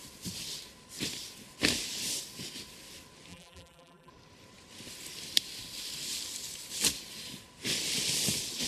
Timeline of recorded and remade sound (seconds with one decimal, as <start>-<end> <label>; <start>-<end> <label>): 0.0-3.3 recorded; 3.3-4.1 remade; 4.1-8.7 recorded